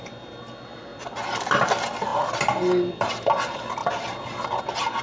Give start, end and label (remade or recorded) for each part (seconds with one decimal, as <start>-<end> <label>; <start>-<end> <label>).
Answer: 0.0-5.0 recorded